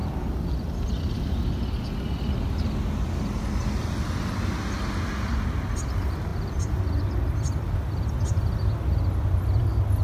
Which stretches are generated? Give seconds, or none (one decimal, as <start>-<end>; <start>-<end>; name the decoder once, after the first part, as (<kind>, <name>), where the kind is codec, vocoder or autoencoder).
none